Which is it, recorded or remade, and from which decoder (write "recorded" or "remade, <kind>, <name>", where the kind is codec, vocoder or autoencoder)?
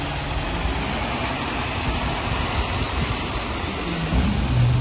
recorded